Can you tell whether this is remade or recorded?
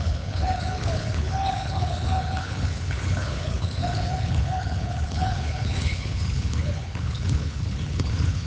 remade